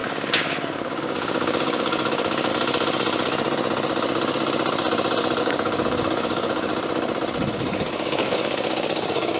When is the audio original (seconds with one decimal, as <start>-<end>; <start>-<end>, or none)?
2.5-5.4; 6.7-7.5